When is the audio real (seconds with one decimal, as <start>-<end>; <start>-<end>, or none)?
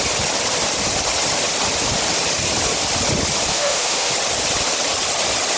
0.0-3.5; 4.1-5.6